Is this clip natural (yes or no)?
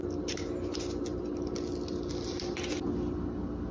yes